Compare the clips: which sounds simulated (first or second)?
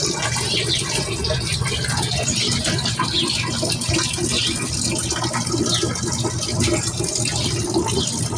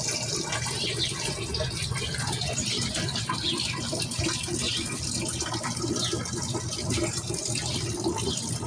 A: second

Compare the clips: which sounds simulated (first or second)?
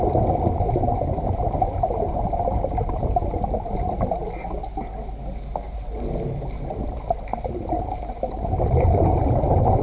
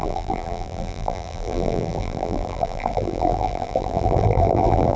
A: second